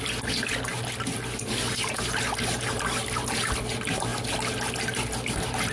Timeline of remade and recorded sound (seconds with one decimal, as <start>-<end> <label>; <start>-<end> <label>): 0.0-5.7 recorded